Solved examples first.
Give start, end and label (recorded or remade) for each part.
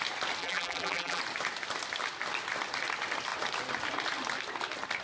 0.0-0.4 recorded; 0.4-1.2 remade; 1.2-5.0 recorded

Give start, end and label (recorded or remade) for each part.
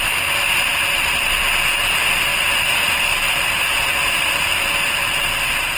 0.0-0.7 recorded; 0.7-1.4 remade; 1.4-2.3 recorded; 2.3-5.2 remade; 5.2-5.8 recorded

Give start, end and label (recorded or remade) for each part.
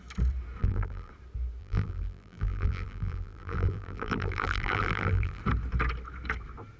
0.0-0.6 recorded; 0.6-1.1 remade; 1.1-1.6 recorded; 1.6-5.4 remade; 5.4-6.8 recorded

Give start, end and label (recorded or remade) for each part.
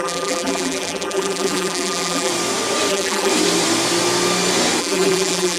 0.0-2.3 remade; 2.3-2.9 recorded; 2.9-3.3 remade; 3.3-4.8 recorded; 4.8-5.6 remade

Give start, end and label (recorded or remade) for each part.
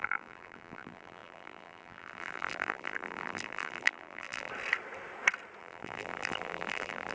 0.0-4.5 remade; 4.5-5.6 recorded; 5.6-7.1 remade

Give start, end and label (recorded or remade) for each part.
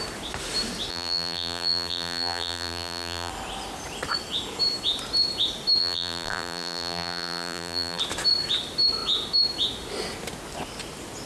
0.0-0.9 recorded; 0.9-3.3 remade; 3.3-5.8 recorded; 5.8-8.0 remade; 8.0-11.3 recorded